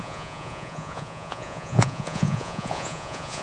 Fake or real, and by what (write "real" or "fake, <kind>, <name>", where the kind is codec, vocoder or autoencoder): fake, vocoder, Vocos